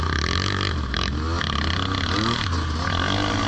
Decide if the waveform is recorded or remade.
recorded